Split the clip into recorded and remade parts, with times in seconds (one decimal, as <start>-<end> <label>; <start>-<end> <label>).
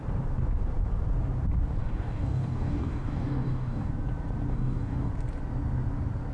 0.0-1.8 recorded; 1.8-3.9 remade; 3.9-4.5 recorded; 4.5-5.1 remade; 5.1-6.3 recorded